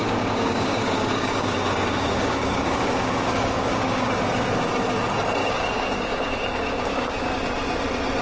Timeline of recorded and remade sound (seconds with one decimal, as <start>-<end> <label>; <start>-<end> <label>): 0.0-4.2 remade; 4.2-5.4 recorded; 5.4-7.3 remade; 7.3-8.2 recorded